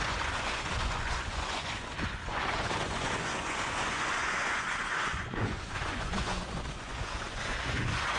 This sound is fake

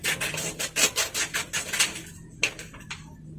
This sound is real